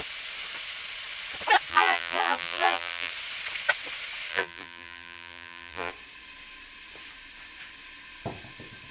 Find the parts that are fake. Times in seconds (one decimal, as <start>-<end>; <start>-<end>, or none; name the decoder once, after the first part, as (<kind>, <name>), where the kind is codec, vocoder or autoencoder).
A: 1.7-3.1 (vocoder, BigVGAN v2); 4.3-5.9